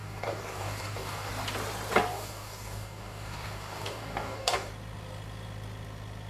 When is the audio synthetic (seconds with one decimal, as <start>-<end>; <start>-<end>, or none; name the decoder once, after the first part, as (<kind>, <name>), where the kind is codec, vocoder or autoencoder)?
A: 0.0-1.3 (codec, DAC); 2.1-4.7